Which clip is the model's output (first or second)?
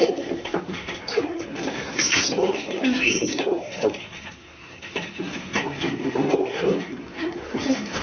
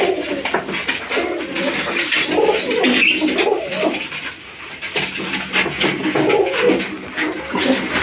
first